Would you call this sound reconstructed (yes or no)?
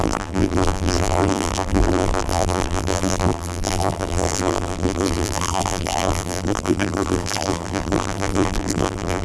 yes